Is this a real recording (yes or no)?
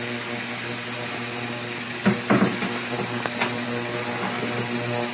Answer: yes